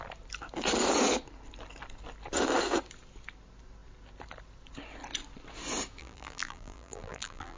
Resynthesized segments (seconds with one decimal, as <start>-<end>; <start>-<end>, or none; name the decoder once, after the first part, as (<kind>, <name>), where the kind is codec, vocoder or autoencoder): 6.0-7.6 (vocoder, BigVGAN v2)